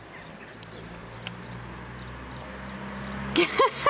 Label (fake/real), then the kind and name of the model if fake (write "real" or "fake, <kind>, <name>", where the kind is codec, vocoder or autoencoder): real